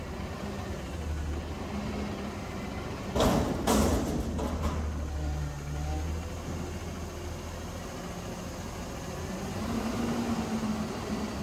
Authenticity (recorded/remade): recorded